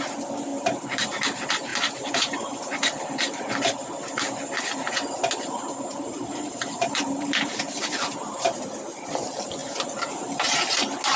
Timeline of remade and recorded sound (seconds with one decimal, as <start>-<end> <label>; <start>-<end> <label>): 0.0-0.5 recorded; 0.5-1.1 remade; 1.1-1.7 recorded; 1.7-3.1 remade; 3.1-5.9 recorded; 5.9-8.1 remade; 8.1-11.2 recorded